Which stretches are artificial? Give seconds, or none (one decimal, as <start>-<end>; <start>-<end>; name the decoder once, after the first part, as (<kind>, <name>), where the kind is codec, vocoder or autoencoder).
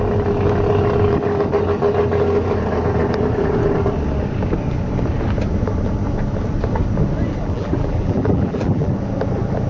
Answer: 7.4-8.9 (vocoder, BigVGAN v2)